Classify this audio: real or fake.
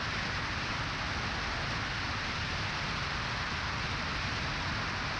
real